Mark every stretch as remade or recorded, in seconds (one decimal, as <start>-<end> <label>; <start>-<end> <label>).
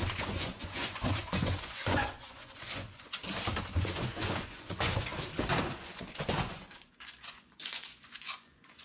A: 0.0-3.2 remade; 3.2-3.7 recorded; 3.7-5.1 remade; 5.1-5.6 recorded; 5.6-8.8 remade